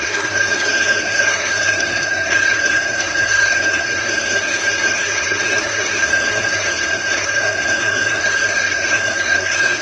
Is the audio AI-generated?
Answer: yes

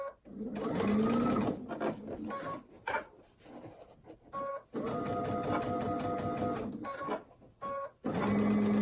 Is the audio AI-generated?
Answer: no